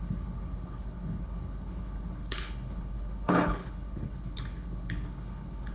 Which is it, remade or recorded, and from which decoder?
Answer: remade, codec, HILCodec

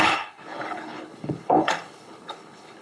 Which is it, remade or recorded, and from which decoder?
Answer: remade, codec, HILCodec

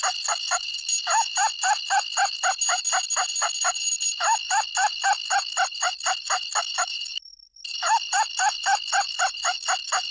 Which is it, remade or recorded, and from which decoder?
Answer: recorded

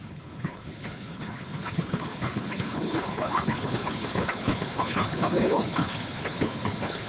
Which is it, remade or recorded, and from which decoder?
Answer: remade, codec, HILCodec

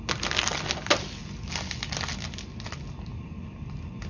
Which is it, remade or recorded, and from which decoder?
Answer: recorded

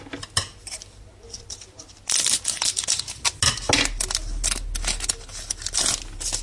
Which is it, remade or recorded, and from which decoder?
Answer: recorded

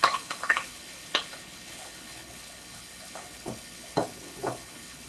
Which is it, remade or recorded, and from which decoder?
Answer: remade, codec, HILCodec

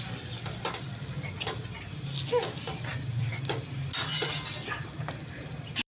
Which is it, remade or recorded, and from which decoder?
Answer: recorded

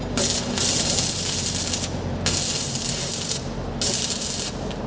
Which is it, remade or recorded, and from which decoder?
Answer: recorded